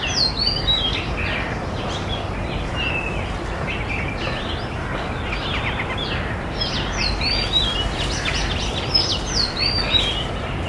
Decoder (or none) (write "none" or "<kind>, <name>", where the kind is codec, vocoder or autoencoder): none